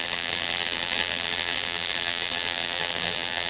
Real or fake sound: fake